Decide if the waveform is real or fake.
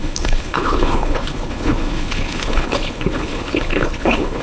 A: fake